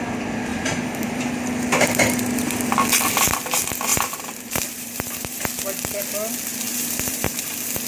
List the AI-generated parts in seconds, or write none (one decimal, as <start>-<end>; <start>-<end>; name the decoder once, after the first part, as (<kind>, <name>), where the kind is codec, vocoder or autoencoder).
0.5-1.2 (vocoder, BigVGAN v2); 3.9-5.5; 6.5-7.4